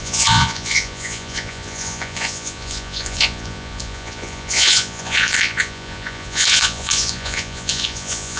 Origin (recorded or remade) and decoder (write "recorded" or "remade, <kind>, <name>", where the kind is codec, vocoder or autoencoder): remade, vocoder, Vocos